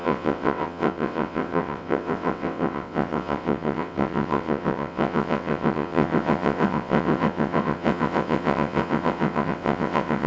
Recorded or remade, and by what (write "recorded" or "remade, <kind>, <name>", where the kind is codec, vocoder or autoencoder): remade, vocoder, WaveNeXt